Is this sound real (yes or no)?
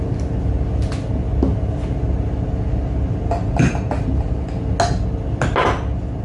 yes